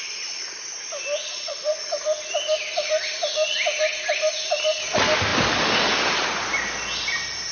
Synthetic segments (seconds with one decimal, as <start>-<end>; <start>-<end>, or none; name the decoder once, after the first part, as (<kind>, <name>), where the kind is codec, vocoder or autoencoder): 1.2-1.8 (vocoder, Vocos)